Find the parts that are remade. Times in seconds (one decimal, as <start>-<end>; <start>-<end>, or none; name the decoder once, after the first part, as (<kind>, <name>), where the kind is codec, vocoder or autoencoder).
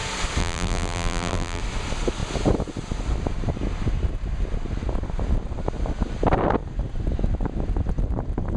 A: 0.4-1.6 (vocoder, BigVGAN v2)